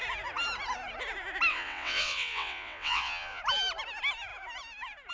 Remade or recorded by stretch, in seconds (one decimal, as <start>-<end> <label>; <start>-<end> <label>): 0.0-1.5 recorded; 1.5-3.4 remade; 3.4-5.1 recorded